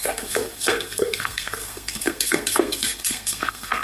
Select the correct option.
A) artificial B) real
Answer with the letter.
A